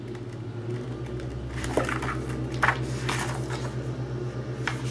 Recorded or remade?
recorded